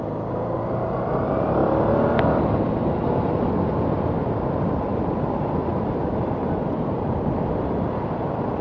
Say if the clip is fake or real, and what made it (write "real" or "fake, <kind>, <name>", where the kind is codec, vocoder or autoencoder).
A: fake, vocoder, BigVGAN v2